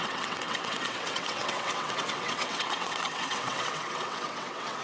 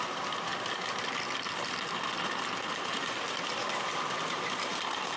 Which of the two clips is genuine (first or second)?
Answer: second